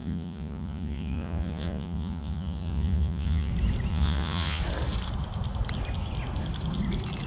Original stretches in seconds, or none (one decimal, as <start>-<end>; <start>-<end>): 3.5-3.9; 4.6-7.3

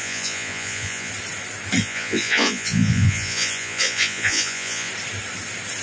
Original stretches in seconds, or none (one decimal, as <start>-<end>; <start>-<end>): 1.1-1.8; 4.9-5.8

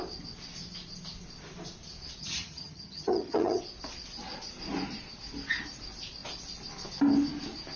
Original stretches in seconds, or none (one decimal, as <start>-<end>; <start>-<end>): 0.0-2.2; 3.6-7.8

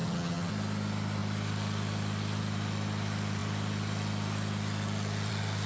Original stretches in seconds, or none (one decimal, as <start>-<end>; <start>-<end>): 0.5-5.7

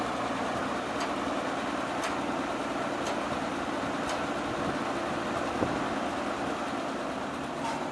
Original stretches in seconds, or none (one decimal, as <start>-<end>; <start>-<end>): 0.0-7.9

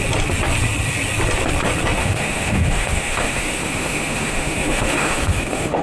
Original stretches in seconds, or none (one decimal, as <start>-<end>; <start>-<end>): 0.0-2.0

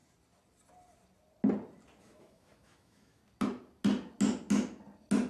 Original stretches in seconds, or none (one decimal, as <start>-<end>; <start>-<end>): 0.0-2.0; 3.2-5.3